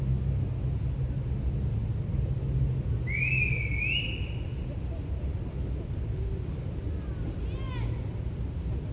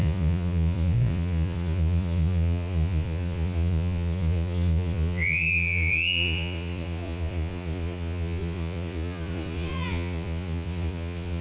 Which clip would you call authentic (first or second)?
first